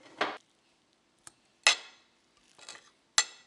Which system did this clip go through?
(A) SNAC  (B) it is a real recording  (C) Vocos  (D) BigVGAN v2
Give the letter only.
B